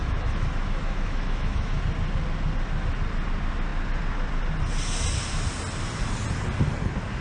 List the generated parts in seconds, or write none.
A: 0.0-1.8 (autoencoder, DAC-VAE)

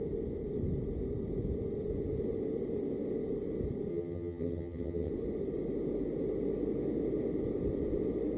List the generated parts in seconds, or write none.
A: 3.9-5.1 (vocoder, HiFi-GAN)